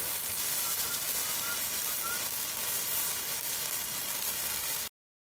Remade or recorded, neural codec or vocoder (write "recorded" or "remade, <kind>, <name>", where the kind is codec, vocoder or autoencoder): recorded